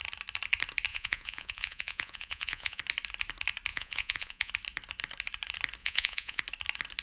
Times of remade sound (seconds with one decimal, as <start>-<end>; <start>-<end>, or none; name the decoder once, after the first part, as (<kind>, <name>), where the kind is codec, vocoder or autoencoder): 0.9-2.8 (vocoder, Vocos); 3.7-4.5; 5.8-6.4